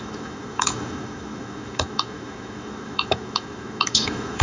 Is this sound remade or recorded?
remade